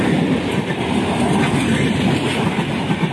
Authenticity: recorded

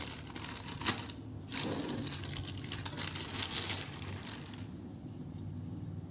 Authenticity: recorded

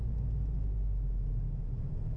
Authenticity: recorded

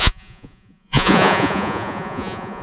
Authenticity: remade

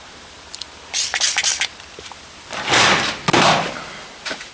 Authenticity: remade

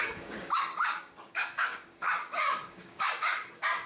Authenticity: remade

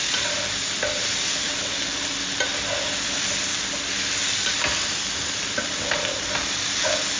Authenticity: recorded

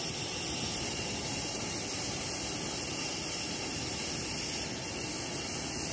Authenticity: recorded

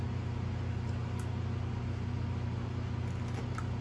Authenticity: recorded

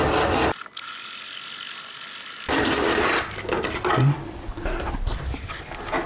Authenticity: recorded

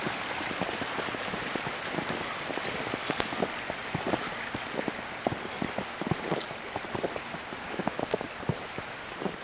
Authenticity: recorded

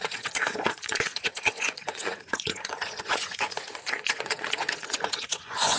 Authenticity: remade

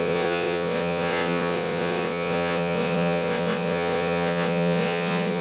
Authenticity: remade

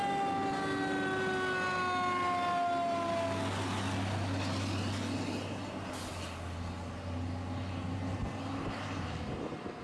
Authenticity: recorded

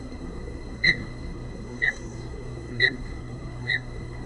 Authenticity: remade